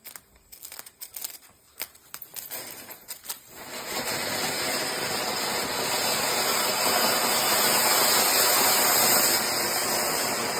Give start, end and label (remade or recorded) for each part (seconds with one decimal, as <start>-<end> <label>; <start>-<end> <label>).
0.0-10.6 recorded